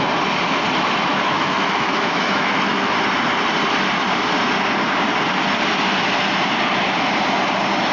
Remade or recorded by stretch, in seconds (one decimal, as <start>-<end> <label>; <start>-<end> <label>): 0.0-1.1 recorded; 1.1-2.9 remade; 2.9-7.9 recorded

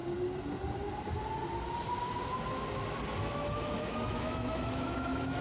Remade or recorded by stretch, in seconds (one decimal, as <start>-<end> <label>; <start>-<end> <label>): 0.0-3.2 recorded; 3.2-5.4 remade